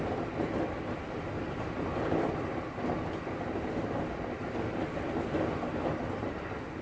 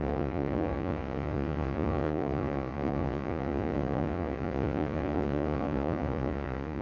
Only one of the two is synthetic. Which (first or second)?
second